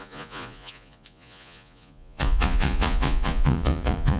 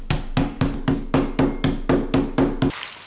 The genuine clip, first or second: second